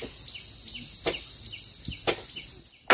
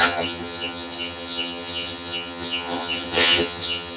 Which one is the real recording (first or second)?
first